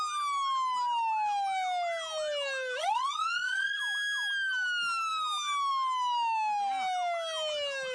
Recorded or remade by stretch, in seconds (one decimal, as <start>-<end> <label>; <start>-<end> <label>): 0.0-2.8 recorded; 2.8-3.8 remade; 3.8-7.9 recorded